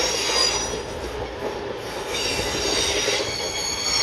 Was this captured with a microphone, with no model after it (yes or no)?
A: yes